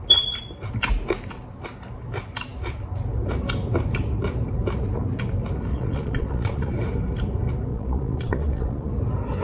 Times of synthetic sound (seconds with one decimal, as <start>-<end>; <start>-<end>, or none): 5.7-6.7; 7.7-8.9